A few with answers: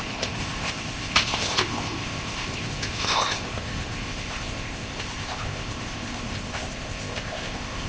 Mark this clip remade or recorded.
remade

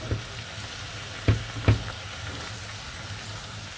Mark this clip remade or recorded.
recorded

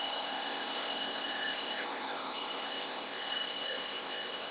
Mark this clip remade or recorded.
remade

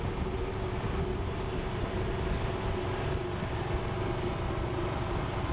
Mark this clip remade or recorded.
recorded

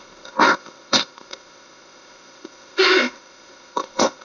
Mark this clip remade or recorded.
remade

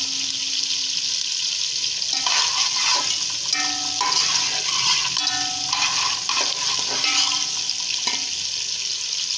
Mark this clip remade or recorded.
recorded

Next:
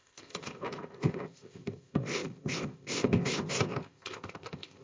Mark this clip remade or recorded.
remade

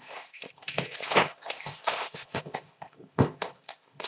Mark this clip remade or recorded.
remade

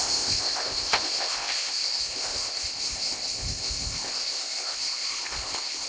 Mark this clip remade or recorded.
remade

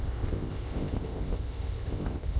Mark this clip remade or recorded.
remade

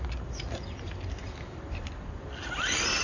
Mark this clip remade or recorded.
recorded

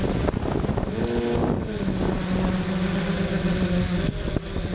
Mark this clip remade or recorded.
recorded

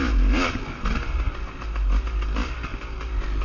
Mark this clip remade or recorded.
recorded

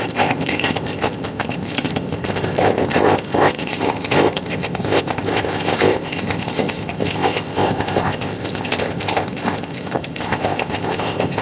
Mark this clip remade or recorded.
remade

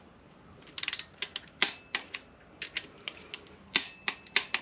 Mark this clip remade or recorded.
recorded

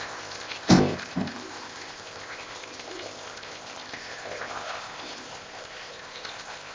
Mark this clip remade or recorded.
remade